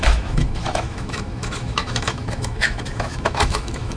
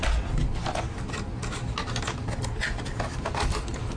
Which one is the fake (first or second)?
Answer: first